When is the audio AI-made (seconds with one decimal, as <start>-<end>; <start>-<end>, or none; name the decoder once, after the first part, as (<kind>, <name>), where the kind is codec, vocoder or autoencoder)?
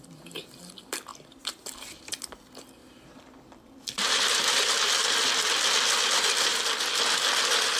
1.1-2.1 (vocoder, BigVGAN v2); 2.8-4.7